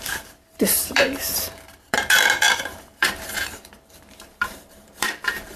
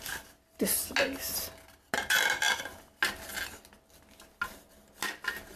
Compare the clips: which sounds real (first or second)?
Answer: second